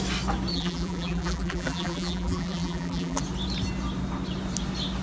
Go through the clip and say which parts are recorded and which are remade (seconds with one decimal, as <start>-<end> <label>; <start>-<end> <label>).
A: 0.0-0.5 recorded; 0.5-3.2 remade; 3.2-5.0 recorded